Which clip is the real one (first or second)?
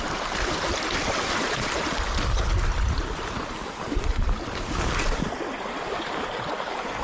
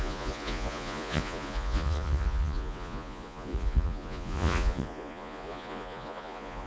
first